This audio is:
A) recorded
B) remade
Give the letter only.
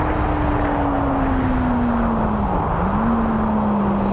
A